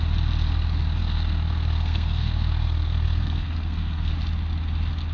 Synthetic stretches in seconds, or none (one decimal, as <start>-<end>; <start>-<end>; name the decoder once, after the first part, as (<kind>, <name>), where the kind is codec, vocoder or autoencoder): 1.0-4.1 (codec, SNAC)